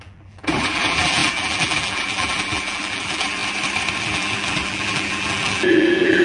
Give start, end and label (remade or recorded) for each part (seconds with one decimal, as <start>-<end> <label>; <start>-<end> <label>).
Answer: 0.0-3.4 remade; 3.4-4.0 recorded; 4.0-6.2 remade